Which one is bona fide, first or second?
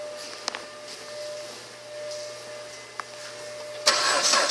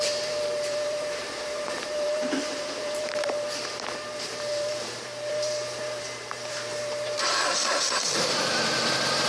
first